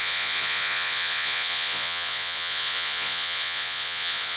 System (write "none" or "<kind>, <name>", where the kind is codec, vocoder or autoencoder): vocoder, Vocos